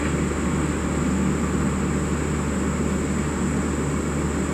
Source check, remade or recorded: recorded